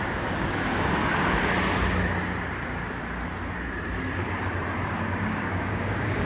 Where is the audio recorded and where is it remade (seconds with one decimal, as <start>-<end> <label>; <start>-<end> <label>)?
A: 0.0-1.1 remade; 1.1-4.9 recorded; 4.9-6.3 remade